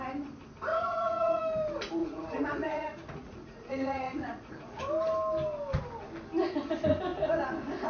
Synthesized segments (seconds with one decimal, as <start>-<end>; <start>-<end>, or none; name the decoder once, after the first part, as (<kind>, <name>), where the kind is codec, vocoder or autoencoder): 0.7-1.4 (vocoder, Vocos); 2.0-4.8